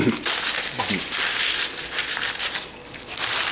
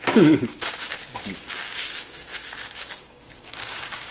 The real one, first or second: first